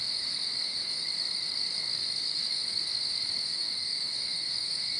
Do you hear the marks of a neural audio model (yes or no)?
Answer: yes